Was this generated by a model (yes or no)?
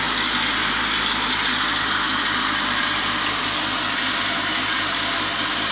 no